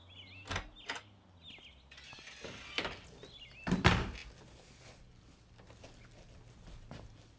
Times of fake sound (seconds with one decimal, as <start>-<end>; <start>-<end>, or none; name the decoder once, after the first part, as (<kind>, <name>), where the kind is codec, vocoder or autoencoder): none